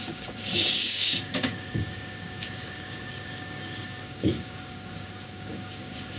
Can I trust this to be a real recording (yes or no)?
no